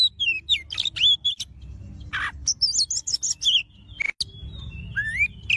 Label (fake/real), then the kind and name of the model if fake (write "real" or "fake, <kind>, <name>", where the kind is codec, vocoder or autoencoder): real